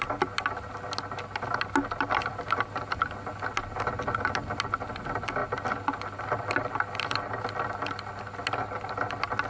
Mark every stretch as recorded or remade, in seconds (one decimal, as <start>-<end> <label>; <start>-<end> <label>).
0.0-9.5 recorded